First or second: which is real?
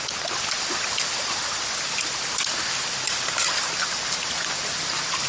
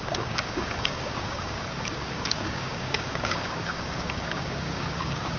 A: first